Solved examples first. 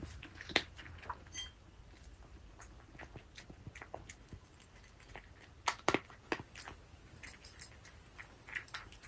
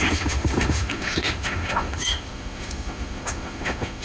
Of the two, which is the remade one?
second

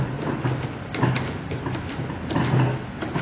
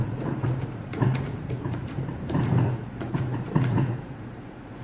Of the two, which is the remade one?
second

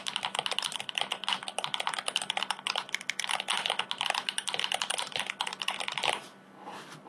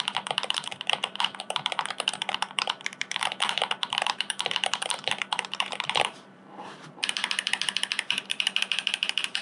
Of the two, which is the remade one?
second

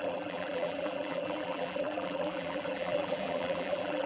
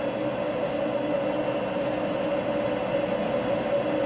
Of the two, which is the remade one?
first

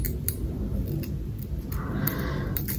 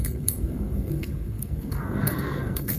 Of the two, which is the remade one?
second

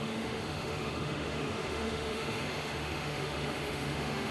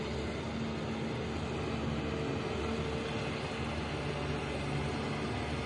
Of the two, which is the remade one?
first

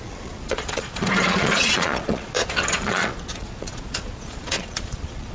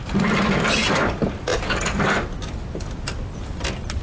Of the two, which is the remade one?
first